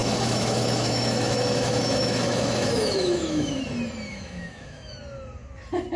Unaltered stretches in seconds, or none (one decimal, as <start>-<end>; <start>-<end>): 3.6-4.1; 5.0-6.0